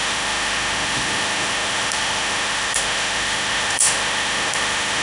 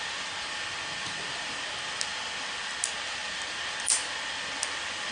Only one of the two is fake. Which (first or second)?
first